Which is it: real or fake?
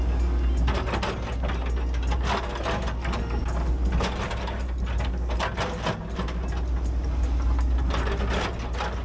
real